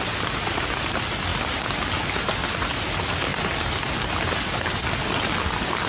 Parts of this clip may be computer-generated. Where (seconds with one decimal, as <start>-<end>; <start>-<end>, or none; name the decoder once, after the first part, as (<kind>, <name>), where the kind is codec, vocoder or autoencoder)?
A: none